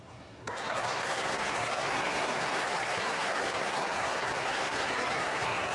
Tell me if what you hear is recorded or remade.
remade